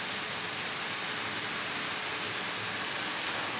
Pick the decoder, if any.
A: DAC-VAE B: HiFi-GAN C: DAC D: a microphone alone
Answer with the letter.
D